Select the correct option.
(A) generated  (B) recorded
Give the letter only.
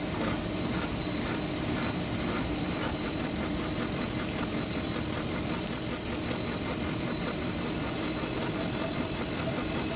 B